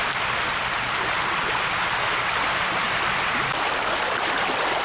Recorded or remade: recorded